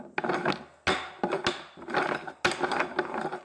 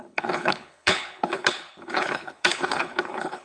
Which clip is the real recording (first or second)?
first